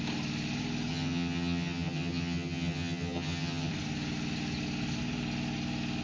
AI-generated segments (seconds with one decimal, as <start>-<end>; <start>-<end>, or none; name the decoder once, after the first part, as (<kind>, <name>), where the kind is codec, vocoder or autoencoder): 0.9-3.7 (vocoder, HiFi-GAN)